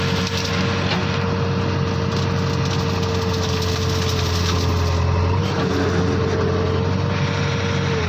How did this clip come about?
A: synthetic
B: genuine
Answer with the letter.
B